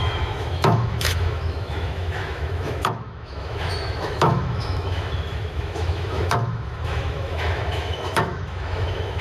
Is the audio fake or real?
fake